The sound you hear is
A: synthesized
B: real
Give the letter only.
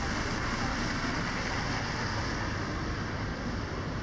B